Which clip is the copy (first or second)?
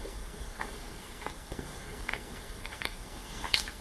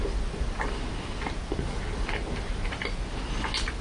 first